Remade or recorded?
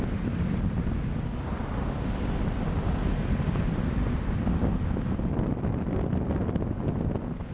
recorded